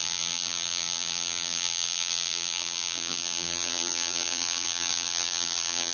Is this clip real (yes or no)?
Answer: no